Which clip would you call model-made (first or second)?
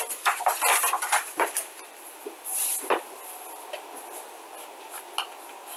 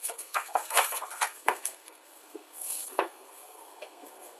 second